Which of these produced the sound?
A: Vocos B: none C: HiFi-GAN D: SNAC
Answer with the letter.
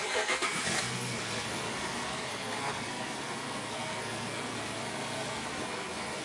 D